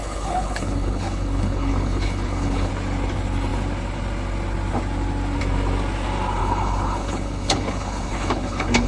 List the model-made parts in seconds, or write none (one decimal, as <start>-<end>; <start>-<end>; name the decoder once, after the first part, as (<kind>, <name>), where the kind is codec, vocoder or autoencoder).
0.0-2.7 (codec, HILCodec); 6.4-8.9